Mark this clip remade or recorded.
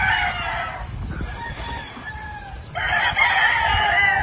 recorded